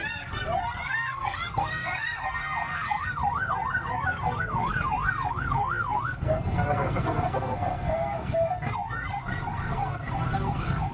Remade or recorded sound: remade